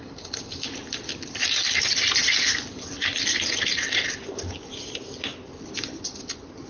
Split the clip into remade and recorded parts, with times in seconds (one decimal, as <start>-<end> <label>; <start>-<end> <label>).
0.0-6.7 recorded